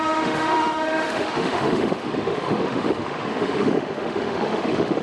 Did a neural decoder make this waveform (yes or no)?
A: yes